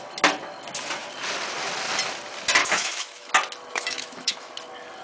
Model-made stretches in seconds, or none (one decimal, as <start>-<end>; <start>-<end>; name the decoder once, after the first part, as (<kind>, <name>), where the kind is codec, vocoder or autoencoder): 2.6-3.3 (autoencoder, DAC-VAE); 3.7-4.5